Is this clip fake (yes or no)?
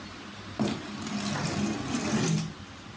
no